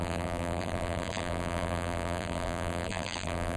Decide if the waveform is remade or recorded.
remade